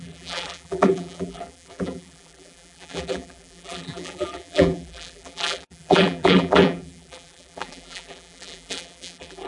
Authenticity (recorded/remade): remade